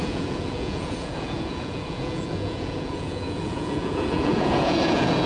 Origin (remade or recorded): remade